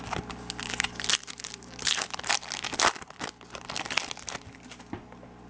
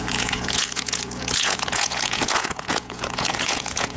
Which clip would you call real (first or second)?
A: first